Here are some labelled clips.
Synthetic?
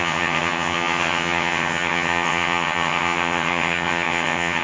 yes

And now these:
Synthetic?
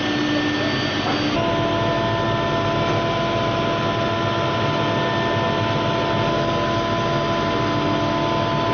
no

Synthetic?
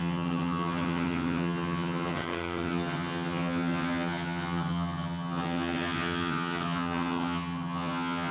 yes